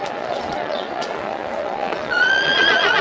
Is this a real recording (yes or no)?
no